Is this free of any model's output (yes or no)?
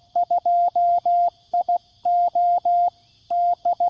no